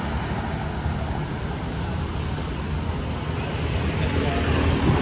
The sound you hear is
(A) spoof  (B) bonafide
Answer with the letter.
B